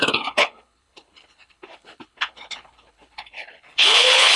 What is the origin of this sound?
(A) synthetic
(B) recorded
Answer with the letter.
A